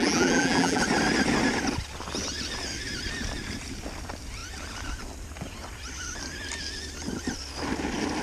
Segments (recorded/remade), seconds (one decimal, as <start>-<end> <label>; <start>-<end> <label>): 0.0-0.8 remade; 0.8-8.2 recorded